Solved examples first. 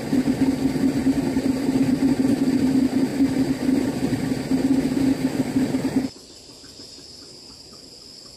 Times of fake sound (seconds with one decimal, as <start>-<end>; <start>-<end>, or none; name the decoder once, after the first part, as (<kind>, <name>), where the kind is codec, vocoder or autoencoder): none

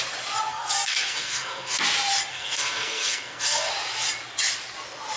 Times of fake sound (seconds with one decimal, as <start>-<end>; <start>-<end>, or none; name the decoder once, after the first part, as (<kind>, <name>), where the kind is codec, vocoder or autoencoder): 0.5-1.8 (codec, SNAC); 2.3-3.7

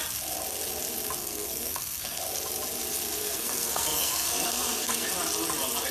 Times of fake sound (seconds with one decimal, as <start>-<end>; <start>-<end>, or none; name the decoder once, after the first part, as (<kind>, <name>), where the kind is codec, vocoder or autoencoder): 1.2-2.2 (codec, SNAC); 3.2-5.1

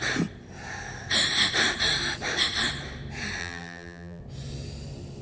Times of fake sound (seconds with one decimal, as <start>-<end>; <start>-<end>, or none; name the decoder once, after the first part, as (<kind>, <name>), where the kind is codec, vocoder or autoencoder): 3.4-4.2 (vocoder, BigVGAN v2)

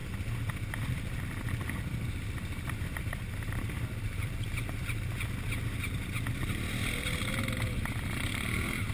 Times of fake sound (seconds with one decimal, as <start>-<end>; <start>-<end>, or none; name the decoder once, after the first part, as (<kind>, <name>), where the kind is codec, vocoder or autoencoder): 2.4-7.2 (vocoder, BigVGAN v2)

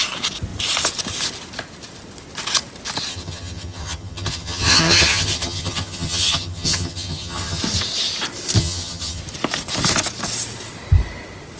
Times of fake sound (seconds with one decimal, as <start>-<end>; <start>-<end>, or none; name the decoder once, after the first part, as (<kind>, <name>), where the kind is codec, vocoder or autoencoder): 3.1-7.6 (vocoder, HiFi-GAN); 8.6-9.2